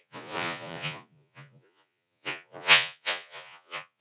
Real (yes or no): no